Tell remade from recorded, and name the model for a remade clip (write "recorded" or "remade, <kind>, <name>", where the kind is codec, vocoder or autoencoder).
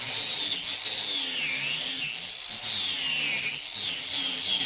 recorded